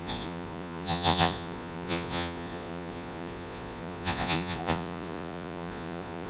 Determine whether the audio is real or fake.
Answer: fake